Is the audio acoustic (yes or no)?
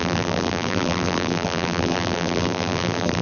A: no